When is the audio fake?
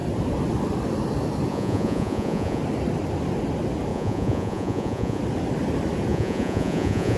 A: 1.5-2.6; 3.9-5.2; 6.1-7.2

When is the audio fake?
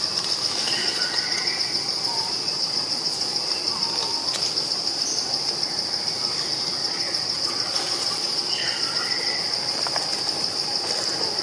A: 0.8-3.5; 6.8-9.4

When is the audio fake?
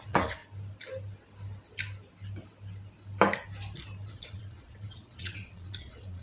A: 0.0-0.4; 4.1-6.2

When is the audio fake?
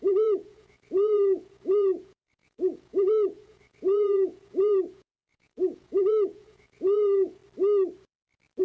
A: 0.0-7.4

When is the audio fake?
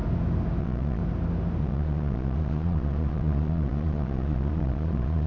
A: 0.6-1.0; 1.6-5.3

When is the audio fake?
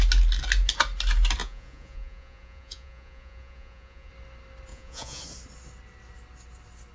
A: 1.4-4.1; 4.7-5.2